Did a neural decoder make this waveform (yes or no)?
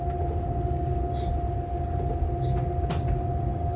no